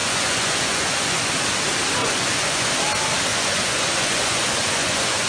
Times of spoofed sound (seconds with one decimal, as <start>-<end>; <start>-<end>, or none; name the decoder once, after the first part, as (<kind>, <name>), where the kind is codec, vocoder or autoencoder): 0.0-1.3 (vocoder, Vocos); 2.0-2.7; 3.3-5.3